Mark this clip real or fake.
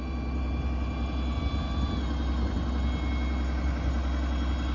real